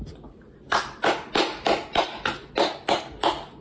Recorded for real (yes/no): yes